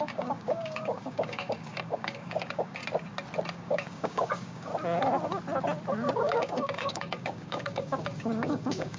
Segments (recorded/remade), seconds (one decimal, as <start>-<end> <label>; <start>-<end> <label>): 0.0-2.8 remade; 2.8-3.5 recorded; 3.5-4.7 remade; 4.7-6.1 recorded; 6.1-9.0 remade